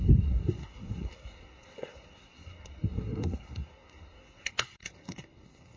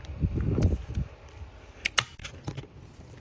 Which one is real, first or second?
second